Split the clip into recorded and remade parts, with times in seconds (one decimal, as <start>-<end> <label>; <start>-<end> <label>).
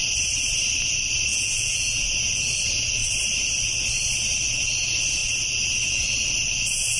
0.0-1.3 recorded; 1.3-2.0 remade; 2.0-7.0 recorded